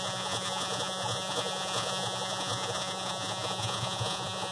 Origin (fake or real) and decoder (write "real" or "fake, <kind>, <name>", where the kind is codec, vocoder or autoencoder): fake, vocoder, Vocos